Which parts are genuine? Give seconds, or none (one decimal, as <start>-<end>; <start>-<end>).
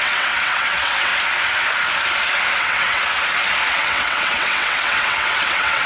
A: 1.1-2.6; 3.0-3.7